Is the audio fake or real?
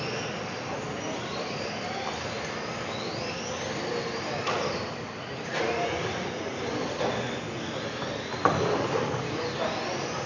real